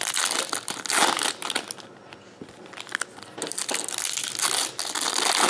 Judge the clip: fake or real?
real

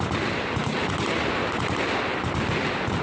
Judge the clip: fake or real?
real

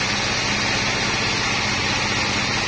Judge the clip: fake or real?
real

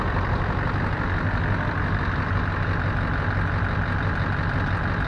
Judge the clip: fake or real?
real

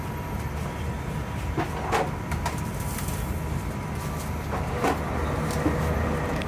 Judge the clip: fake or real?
real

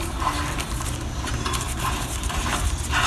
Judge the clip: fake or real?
real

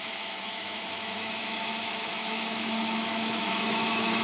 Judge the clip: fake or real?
fake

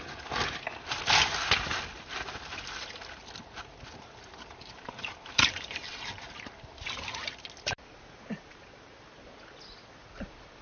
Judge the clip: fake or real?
real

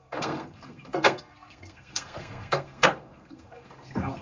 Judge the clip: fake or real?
fake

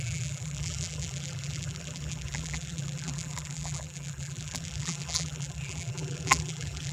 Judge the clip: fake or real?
fake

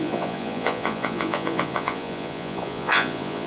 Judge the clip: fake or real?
fake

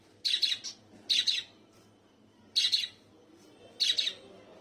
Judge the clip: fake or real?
real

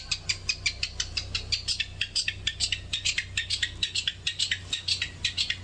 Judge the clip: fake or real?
real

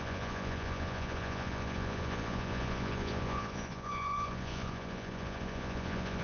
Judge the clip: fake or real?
fake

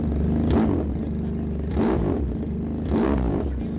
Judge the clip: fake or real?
real